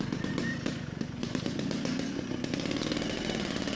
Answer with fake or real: fake